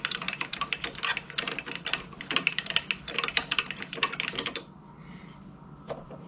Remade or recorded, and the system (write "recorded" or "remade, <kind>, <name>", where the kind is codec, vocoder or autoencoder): recorded